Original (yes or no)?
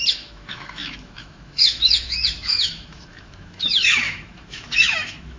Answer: no